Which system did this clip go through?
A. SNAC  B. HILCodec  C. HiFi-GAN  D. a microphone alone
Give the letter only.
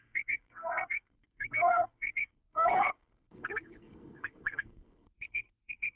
A